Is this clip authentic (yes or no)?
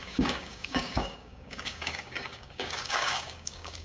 no